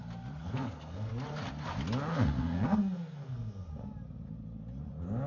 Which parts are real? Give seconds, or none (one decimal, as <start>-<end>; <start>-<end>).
0.0-0.4; 1.1-2.1; 3.7-5.3